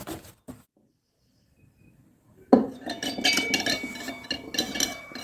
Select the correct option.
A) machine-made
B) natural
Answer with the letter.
B